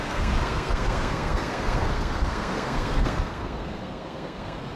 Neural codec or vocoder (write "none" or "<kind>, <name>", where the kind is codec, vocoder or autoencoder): codec, SNAC